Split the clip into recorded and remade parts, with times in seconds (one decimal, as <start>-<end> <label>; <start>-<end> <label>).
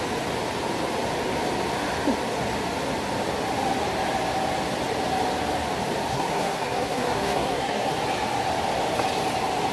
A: 0.0-6.1 recorded; 6.1-7.9 remade; 7.9-9.7 recorded